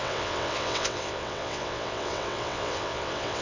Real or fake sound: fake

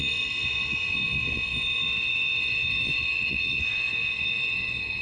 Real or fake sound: fake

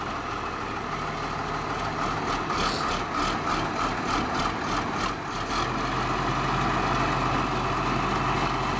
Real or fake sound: real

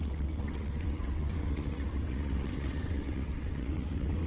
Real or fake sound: fake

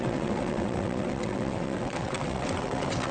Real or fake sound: fake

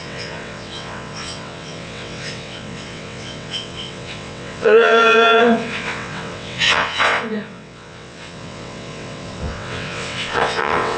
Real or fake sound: fake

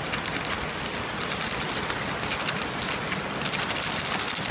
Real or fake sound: real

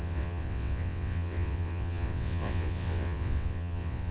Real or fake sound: fake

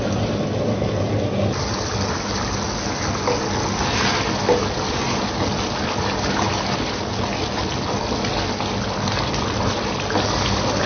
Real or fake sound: real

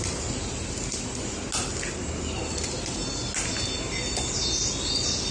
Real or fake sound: real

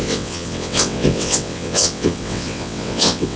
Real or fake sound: fake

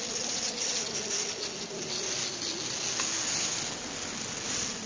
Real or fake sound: real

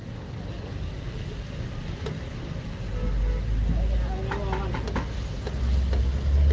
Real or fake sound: real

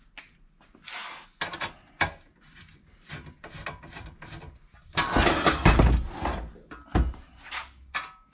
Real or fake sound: real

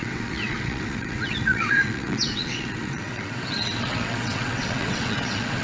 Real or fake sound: fake